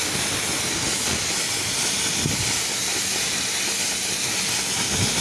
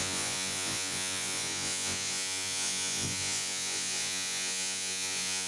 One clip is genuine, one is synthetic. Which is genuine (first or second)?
first